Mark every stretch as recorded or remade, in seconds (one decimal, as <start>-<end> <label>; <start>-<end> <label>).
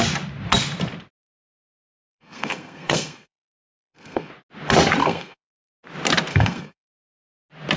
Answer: 0.0-1.2 recorded; 1.2-4.3 remade; 4.3-5.0 recorded; 5.0-5.7 remade; 5.7-6.3 recorded; 6.3-7.3 remade; 7.3-7.8 recorded